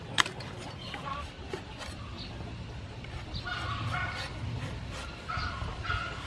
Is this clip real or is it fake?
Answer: real